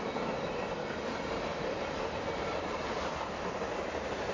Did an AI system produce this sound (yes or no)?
no